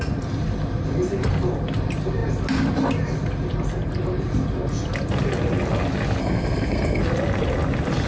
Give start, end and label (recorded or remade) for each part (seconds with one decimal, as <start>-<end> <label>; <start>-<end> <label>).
0.0-6.2 recorded; 6.2-7.0 remade; 7.0-8.1 recorded